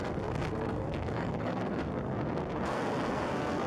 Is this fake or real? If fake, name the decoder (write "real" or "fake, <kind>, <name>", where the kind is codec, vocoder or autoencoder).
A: fake, codec, SNAC